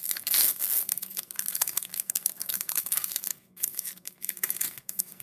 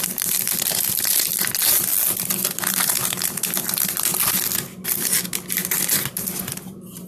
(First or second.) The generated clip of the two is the first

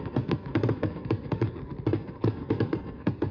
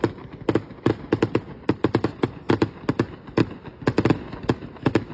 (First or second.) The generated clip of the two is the first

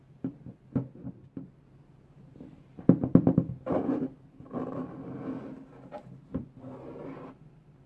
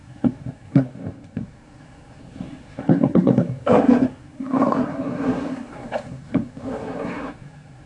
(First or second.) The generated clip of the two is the second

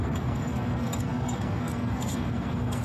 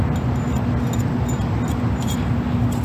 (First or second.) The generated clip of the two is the first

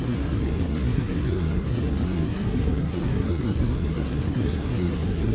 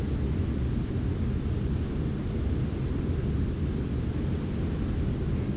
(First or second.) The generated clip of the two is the first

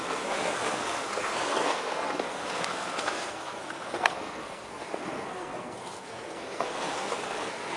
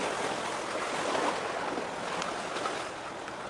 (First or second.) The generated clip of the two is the first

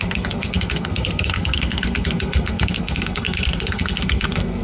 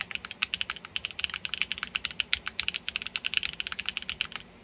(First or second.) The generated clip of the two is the first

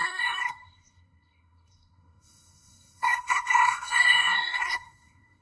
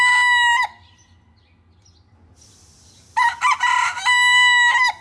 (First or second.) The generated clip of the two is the first